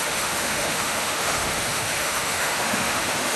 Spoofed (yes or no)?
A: yes